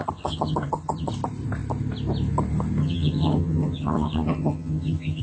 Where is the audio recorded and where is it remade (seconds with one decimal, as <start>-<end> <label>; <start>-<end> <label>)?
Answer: 0.0-1.1 remade; 1.1-2.8 recorded; 2.8-5.2 remade